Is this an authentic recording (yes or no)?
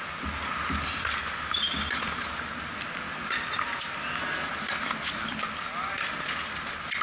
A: yes